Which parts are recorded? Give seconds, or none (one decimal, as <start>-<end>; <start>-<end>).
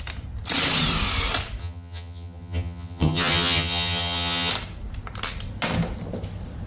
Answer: 0.0-1.6; 4.5-6.7